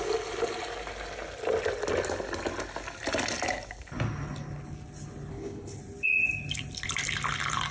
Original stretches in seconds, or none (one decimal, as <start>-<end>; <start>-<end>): 0.0-5.3; 5.8-7.7